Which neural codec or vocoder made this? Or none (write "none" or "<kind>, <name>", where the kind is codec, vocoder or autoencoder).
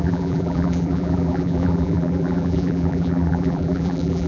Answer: vocoder, BigVGAN v2